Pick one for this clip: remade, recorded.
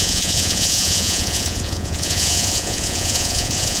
remade